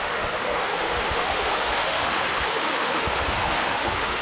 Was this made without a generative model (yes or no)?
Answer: no